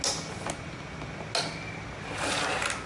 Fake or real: real